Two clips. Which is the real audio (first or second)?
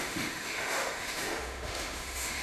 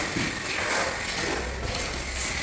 second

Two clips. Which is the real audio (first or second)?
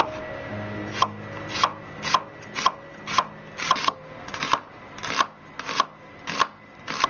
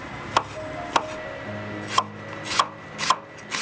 first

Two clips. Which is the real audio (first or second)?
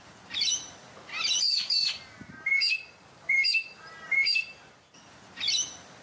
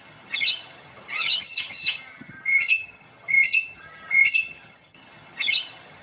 first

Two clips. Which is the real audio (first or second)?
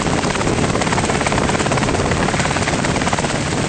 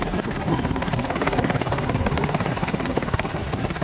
first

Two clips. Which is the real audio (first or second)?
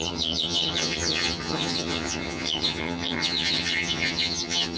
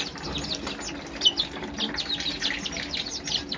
second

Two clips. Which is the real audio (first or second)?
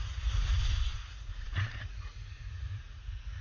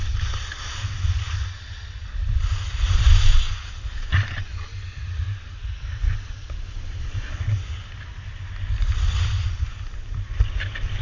second